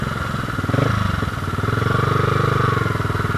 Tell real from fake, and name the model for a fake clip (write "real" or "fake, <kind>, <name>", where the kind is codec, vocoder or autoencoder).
real